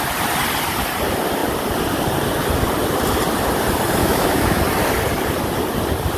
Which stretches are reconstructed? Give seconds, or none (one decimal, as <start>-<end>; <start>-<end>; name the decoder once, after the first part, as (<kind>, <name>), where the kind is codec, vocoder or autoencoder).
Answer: 4.0-4.6 (autoencoder, DAC-VAE)

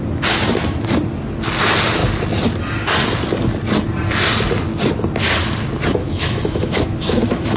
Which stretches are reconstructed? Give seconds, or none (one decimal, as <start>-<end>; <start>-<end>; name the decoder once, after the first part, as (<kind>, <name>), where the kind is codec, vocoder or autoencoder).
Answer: 6.0-7.6 (autoencoder, DAC-VAE)

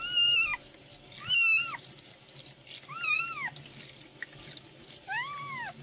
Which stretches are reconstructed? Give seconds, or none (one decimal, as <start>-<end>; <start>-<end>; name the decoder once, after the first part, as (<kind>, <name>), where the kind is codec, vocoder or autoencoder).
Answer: none

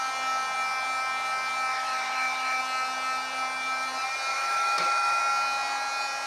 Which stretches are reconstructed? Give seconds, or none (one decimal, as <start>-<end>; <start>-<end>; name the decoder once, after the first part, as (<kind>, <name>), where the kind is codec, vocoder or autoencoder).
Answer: 1.7-2.6 (autoencoder, DAC-VAE); 4.3-5.2

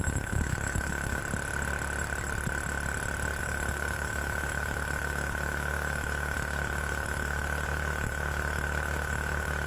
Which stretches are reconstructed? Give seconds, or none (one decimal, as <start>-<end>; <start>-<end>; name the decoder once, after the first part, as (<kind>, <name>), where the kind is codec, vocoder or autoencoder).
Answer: 0.0-1.2 (autoencoder, DAC-VAE); 3.4-9.7